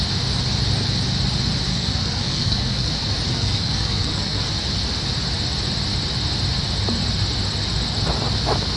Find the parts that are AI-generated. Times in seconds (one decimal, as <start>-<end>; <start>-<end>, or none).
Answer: 1.7-2.9; 3.3-4.5

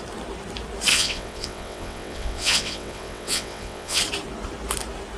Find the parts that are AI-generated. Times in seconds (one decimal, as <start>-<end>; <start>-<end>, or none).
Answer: 0.9-4.0

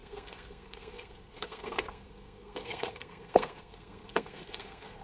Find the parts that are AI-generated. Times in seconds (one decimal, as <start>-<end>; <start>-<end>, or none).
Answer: 0.0-5.0

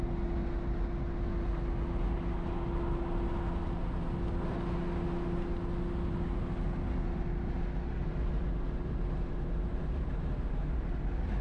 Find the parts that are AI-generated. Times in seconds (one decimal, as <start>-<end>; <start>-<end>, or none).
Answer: none

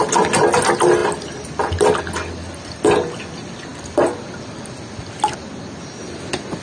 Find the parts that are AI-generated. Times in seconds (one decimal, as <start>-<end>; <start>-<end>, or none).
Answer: none

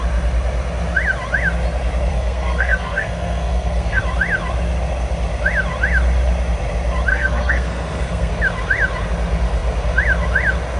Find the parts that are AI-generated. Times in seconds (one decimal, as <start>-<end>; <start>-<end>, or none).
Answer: 2.1-4.0; 7.1-8.3

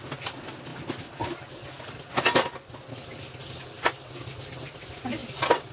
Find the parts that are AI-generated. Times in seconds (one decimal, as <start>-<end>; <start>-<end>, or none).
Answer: none